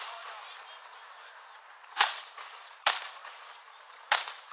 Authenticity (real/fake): fake